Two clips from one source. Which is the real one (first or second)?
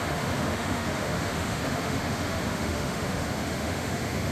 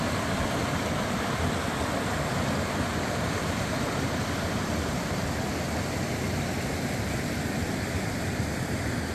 second